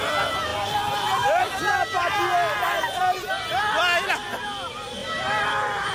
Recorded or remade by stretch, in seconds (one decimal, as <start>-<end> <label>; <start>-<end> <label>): 0.0-3.0 recorded; 3.0-3.5 remade; 3.5-5.0 recorded; 5.0-5.5 remade; 5.5-5.9 recorded